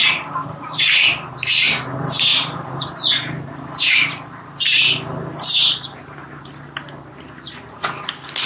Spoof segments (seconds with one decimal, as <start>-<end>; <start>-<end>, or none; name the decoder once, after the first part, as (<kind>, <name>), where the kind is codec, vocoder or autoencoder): 0.0-1.0 (vocoder, BigVGAN v2); 2.3-6.4